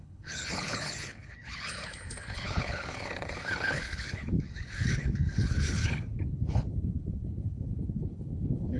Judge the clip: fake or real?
fake